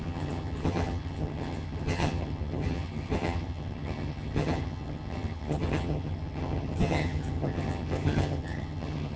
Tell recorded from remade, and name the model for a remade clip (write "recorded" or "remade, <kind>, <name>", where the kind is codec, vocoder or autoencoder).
remade, vocoder, HiFi-GAN